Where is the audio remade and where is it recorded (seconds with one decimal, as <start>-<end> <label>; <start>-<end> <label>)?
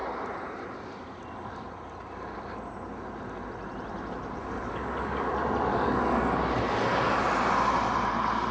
0.0-4.4 recorded; 4.4-5.3 remade; 5.3-5.7 recorded; 5.7-6.3 remade; 6.3-8.5 recorded